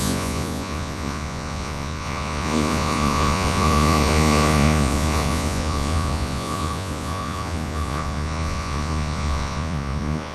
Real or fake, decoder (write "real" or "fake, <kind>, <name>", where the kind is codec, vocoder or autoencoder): fake, vocoder, Vocos